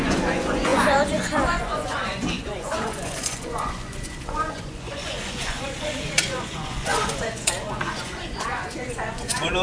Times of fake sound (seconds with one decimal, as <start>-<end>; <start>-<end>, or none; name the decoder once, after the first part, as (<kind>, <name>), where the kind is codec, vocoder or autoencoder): 0.0-9.6 (vocoder, Vocos)